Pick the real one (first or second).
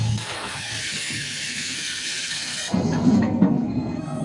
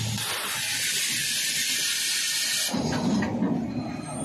second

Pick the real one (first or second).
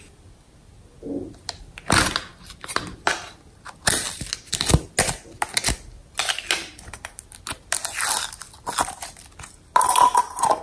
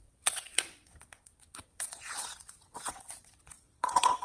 first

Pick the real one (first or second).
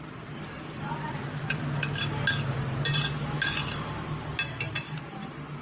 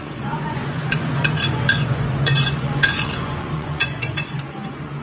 first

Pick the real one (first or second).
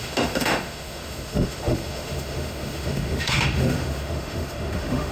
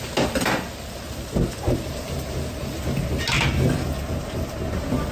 second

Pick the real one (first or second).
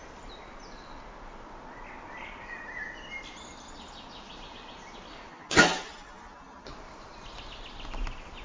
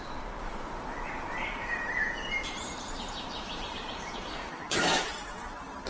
first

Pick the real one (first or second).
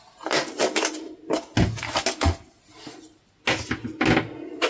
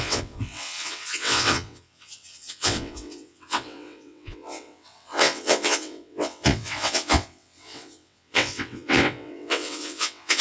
first